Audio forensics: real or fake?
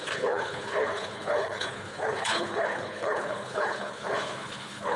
fake